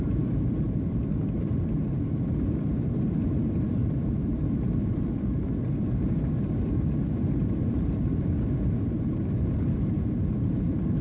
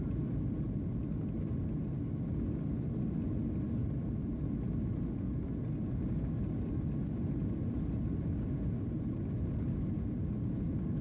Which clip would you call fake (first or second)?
first